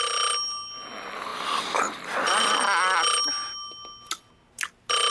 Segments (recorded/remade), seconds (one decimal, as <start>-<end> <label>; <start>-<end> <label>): 0.0-5.1 recorded